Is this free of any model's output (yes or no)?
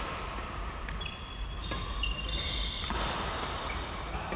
yes